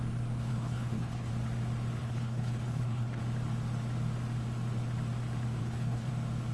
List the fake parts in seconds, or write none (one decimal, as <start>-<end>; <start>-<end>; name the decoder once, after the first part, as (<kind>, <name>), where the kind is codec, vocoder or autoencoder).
0.5-1.3 (codec, HILCodec); 2.0-3.2; 5.6-6.1